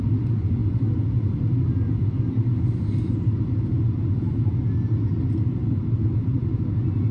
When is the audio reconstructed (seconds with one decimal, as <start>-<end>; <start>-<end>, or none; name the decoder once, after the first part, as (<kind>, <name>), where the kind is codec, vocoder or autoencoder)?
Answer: none